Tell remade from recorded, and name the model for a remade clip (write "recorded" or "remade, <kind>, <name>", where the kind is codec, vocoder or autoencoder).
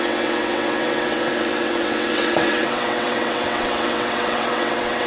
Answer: remade, vocoder, WaveNeXt